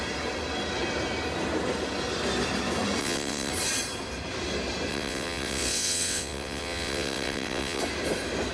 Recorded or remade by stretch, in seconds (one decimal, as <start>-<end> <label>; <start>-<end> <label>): 0.0-3.0 recorded; 3.0-3.5 remade; 3.5-4.9 recorded; 4.9-7.8 remade; 7.8-8.5 recorded